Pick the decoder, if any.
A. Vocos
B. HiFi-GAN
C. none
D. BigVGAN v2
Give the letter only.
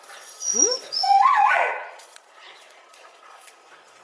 A